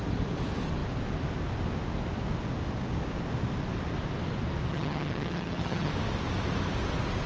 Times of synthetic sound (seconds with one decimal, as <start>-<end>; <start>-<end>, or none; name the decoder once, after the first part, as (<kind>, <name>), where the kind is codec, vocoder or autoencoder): 4.7-5.9 (vocoder, HiFi-GAN)